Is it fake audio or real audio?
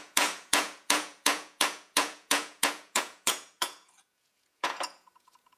fake